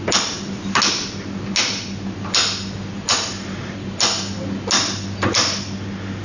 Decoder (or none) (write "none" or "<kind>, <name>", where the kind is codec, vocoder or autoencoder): none